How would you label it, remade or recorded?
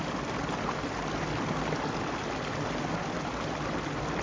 recorded